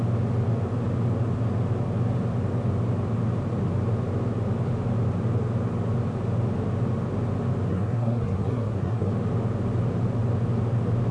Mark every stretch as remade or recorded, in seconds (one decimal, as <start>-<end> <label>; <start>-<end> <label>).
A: 0.0-7.7 recorded; 7.7-9.1 remade; 9.1-11.1 recorded